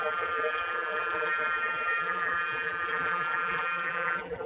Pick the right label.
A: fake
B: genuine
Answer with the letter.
A